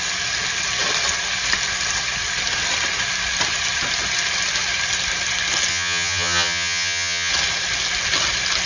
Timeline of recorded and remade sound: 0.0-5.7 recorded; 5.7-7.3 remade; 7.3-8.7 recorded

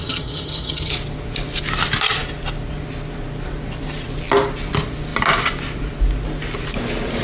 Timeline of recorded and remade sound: 0.0-0.9 remade; 0.9-7.2 recorded

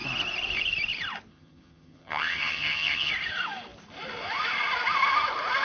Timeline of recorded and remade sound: 0.0-1.3 recorded; 1.3-3.1 remade; 3.1-5.6 recorded

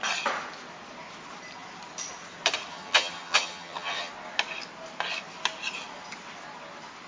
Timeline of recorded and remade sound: 0.0-2.7 recorded; 2.7-4.1 remade; 4.1-7.1 recorded